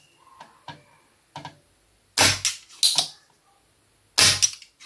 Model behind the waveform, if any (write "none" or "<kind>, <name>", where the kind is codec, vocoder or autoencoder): none